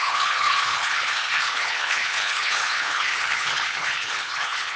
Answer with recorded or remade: remade